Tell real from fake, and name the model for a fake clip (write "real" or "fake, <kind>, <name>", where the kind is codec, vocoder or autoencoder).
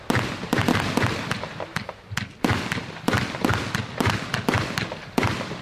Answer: real